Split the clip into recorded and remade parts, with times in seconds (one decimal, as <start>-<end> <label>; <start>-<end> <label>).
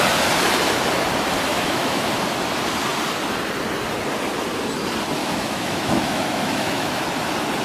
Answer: 0.0-1.5 recorded; 1.5-2.1 remade; 2.1-5.2 recorded; 5.2-7.0 remade; 7.0-7.6 recorded